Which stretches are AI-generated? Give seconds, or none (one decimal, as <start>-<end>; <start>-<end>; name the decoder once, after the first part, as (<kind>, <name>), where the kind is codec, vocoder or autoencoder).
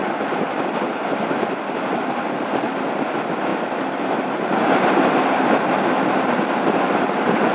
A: none